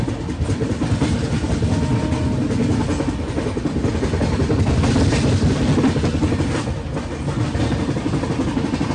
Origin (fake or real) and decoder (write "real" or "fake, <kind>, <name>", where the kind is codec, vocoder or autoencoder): real